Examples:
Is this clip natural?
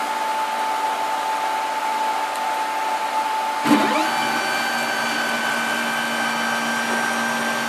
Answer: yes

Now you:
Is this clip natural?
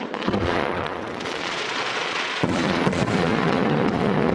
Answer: no